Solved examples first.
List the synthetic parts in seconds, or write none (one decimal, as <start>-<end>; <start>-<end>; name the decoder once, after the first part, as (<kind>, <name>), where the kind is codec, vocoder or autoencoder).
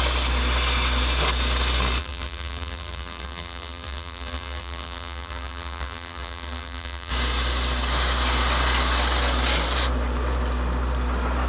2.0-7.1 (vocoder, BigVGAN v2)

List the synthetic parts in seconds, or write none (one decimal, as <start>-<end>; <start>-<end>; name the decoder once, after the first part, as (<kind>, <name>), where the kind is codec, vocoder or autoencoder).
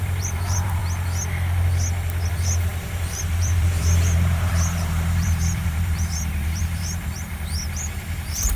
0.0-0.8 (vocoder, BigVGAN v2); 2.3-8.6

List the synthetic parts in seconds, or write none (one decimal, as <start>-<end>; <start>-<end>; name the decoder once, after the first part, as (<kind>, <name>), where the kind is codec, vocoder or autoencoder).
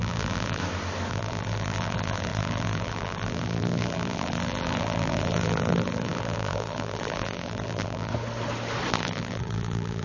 0.0-0.6 (vocoder, BigVGAN v2); 1.1-8.1; 8.9-10.0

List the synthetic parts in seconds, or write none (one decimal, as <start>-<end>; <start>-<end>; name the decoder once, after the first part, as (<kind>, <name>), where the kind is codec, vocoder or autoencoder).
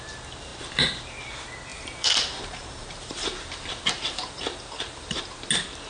1.7-5.2 (vocoder, BigVGAN v2)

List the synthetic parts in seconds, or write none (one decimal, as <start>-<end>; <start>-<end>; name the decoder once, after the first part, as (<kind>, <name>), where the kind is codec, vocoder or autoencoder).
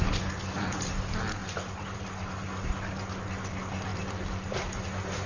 1.4-2.0 (vocoder, BigVGAN v2); 3.9-4.8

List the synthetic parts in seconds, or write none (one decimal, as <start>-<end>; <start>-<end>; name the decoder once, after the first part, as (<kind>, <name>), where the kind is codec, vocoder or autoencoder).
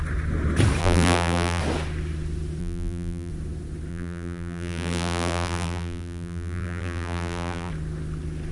0.8-1.6 (vocoder, BigVGAN v2); 2.6-3.3; 3.9-7.7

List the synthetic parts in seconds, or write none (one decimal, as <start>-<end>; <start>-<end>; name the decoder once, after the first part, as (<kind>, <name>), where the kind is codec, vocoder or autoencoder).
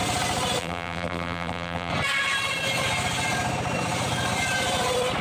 0.6-1.9 (vocoder, BigVGAN v2)